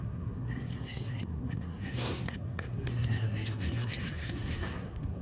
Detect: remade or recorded remade